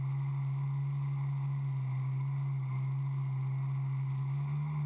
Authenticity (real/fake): real